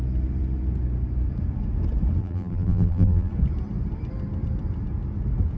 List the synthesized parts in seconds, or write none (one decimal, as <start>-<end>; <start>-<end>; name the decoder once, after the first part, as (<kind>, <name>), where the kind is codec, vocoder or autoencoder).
2.2-3.3 (vocoder, BigVGAN v2)